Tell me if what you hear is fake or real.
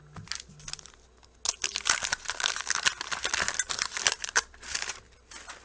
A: real